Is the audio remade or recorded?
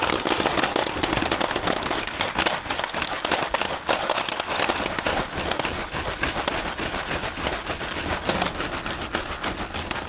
recorded